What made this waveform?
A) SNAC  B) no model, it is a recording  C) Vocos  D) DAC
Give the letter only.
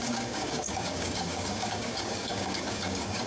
D